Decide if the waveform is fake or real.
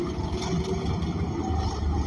real